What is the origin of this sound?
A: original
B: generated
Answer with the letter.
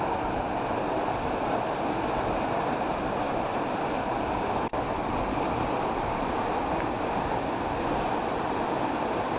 A